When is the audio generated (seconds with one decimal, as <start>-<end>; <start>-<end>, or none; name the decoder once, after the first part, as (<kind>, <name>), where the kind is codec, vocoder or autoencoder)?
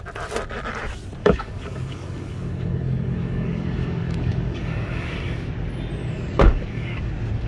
1.2-5.5 (codec, DAC); 6.0-7.1